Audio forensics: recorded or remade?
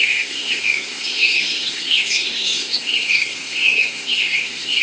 remade